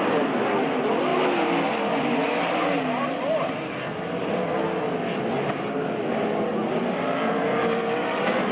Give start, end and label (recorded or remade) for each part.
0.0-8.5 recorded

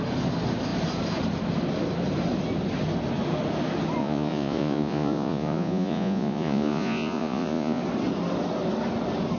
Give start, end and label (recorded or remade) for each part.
0.0-4.0 recorded; 4.0-7.8 remade; 7.8-9.4 recorded

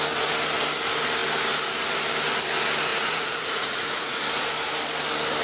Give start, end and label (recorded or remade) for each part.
0.0-2.9 recorded; 2.9-4.2 remade; 4.2-5.4 recorded